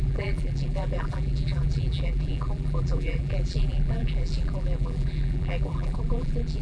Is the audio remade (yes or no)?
yes